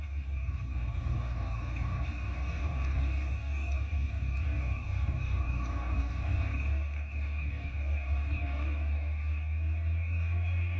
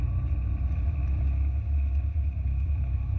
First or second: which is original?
second